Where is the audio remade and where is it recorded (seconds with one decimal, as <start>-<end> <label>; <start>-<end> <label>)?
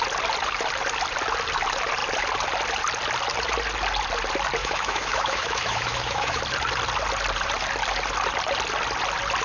0.0-4.6 recorded; 4.6-6.4 remade; 6.4-9.4 recorded